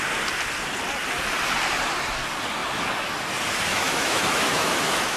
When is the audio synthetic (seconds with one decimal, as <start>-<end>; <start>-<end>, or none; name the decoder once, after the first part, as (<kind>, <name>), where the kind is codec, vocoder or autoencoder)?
3.7-5.2 (autoencoder, DAC-VAE)